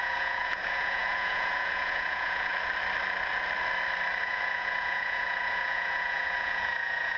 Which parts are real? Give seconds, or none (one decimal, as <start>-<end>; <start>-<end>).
2.5-4.2